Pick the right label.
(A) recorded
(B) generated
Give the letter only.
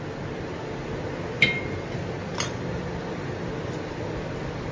A